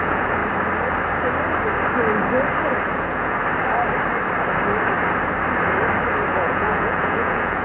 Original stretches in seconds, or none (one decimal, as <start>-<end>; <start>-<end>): 0.4-3.0; 3.4-6.3